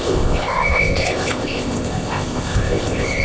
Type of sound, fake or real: fake